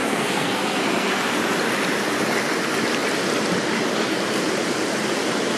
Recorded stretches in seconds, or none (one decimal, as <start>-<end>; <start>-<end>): 1.2-5.6